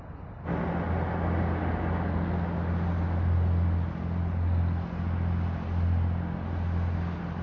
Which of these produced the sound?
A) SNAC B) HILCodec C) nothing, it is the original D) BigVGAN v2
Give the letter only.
C